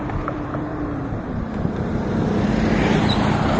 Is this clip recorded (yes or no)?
no